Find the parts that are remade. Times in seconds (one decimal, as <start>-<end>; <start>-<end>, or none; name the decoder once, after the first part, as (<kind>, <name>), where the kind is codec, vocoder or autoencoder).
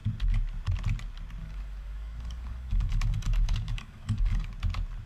1.4-4.5 (codec, DAC)